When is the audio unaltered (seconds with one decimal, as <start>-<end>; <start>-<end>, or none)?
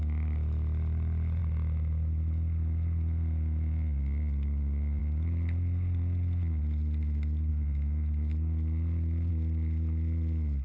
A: 0.0-10.6